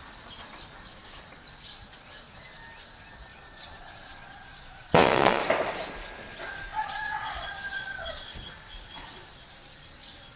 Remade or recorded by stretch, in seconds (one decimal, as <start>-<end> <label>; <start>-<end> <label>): 0.0-3.3 recorded; 3.3-5.4 remade; 5.4-6.7 recorded; 6.7-8.4 remade; 8.4-9.0 recorded; 9.0-9.5 remade; 9.5-10.4 recorded